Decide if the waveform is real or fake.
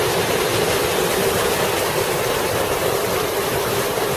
real